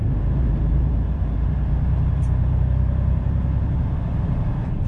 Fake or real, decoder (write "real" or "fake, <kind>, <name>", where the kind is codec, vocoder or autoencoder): fake, vocoder, BigVGAN v2